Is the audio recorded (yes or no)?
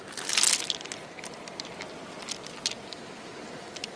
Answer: yes